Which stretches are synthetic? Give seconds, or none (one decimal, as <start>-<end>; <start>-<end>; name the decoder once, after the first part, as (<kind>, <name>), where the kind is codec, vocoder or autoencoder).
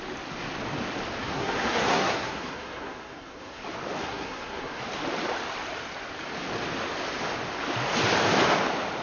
1.2-3.6 (codec, SNAC); 4.0-4.8